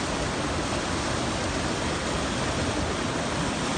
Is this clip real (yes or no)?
yes